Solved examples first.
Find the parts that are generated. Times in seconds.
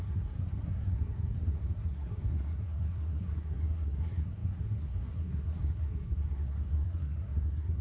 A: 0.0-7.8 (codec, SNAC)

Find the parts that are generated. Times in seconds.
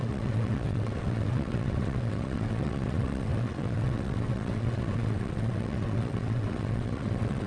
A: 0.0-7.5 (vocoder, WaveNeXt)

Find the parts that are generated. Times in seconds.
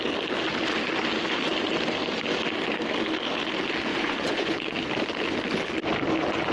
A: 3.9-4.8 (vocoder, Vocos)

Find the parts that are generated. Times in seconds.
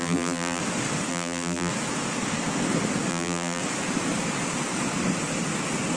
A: 0.0-0.6 (vocoder, BigVGAN v2); 1.1-1.7; 3.1-3.6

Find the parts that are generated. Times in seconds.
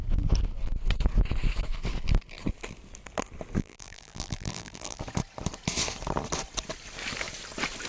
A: 3.6-5.0 (vocoder, BigVGAN v2)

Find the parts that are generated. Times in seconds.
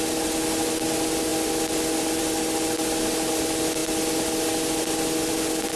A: none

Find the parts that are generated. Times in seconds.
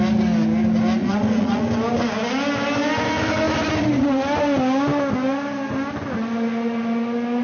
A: 1.0-1.6 (vocoder, Vocos)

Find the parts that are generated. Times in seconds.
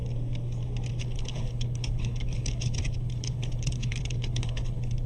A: 1.0-5.1 (codec, HILCodec)